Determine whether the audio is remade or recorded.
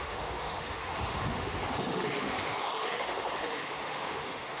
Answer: remade